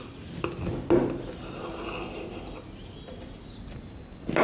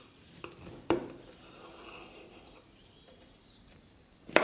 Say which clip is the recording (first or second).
first